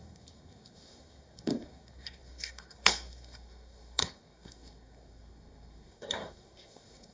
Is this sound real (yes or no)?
no